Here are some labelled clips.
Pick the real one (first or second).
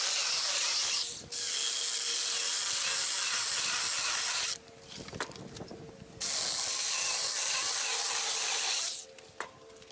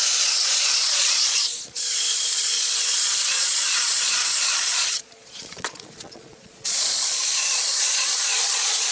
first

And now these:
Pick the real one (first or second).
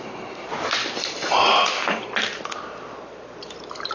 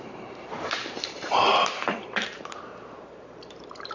first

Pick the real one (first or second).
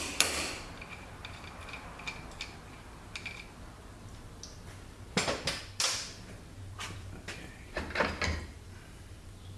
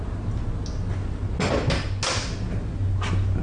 second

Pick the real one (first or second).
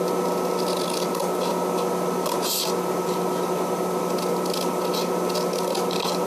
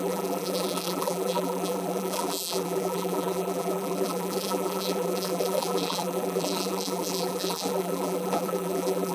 first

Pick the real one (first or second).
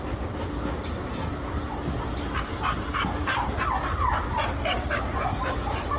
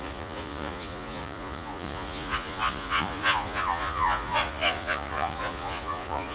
first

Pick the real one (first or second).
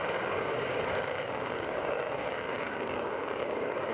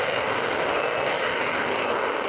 second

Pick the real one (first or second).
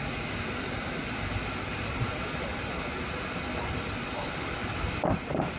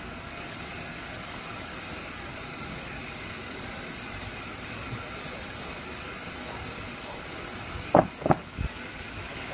first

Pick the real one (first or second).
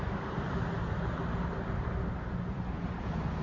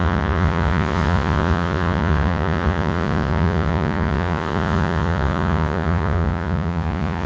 first